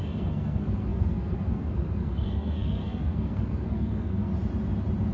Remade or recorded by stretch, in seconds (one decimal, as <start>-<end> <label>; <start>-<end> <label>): 0.0-4.3 remade; 4.3-5.1 recorded